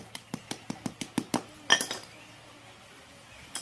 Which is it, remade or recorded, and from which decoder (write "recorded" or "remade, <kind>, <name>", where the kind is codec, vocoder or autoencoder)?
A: recorded